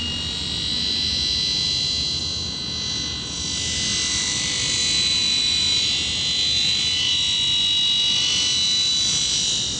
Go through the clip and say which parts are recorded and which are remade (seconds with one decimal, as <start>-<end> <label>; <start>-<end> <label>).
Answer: 0.0-9.8 recorded